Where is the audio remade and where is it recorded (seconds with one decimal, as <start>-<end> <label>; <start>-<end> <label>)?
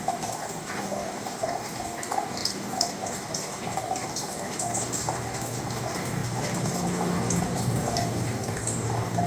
0.0-9.3 remade